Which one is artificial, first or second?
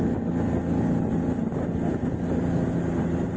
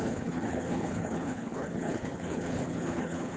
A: second